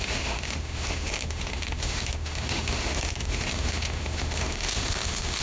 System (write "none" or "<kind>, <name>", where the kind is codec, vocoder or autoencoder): autoencoder, DAC-VAE